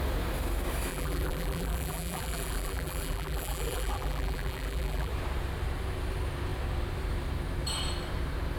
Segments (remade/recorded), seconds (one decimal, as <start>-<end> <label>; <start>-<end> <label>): 0.0-0.9 recorded; 0.9-5.1 remade; 5.1-8.6 recorded